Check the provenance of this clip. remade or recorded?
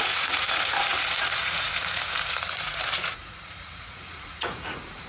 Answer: remade